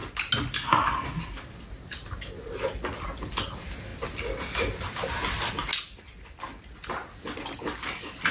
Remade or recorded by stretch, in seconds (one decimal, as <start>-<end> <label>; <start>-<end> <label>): 0.0-8.3 recorded